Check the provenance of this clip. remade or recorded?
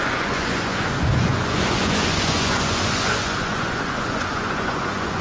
remade